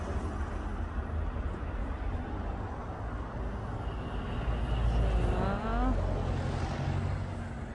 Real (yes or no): yes